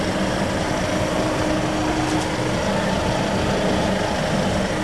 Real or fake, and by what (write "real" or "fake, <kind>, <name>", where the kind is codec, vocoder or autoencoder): real